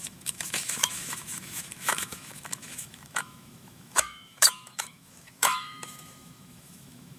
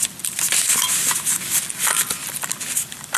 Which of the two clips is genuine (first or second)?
second